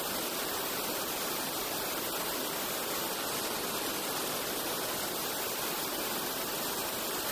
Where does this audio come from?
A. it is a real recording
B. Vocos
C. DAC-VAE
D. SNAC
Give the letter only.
A